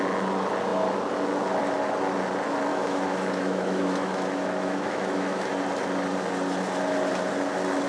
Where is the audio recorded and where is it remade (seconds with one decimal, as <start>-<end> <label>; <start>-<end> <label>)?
0.0-2.7 recorded; 2.7-5.5 remade; 5.5-7.9 recorded